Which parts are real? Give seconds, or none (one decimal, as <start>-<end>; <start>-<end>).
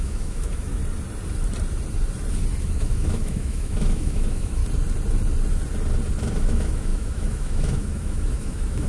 0.8-2.6; 4.6-6.3